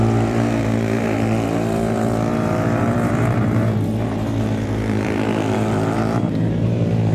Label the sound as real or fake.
fake